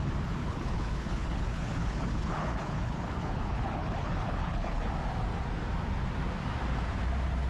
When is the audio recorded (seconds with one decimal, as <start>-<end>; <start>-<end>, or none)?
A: 0.0-0.4; 4.9-7.5